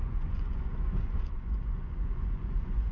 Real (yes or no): no